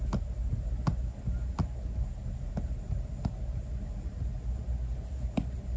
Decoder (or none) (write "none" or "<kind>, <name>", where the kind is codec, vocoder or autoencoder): none